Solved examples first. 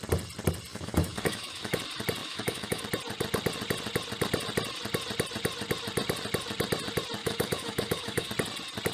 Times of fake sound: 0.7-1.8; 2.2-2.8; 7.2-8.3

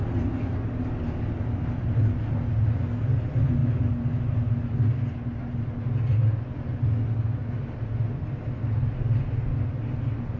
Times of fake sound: none

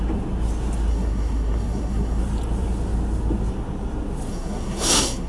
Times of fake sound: 0.9-2.2; 4.3-5.3

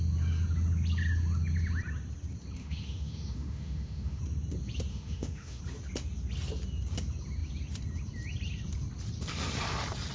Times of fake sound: 2.6-4.2; 4.9-5.6

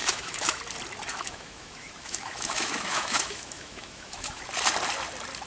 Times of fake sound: 0.0-0.6; 1.1-4.4

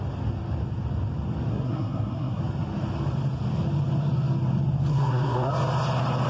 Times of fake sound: 1.5-2.4; 4.9-5.5

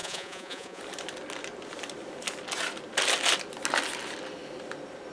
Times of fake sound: 0.0-0.8

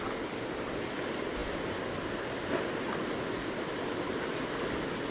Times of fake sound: none